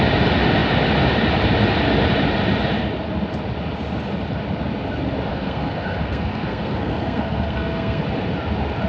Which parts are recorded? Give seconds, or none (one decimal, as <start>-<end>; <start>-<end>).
0.0-5.3; 8.0-8.9